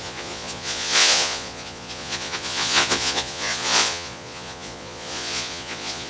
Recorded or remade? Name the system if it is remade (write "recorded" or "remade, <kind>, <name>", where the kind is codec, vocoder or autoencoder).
remade, vocoder, Vocos